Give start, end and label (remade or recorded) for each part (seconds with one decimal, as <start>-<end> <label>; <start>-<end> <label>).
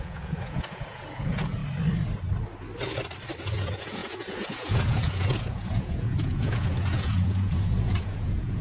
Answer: 0.0-1.6 remade; 1.6-3.4 recorded; 3.4-8.6 remade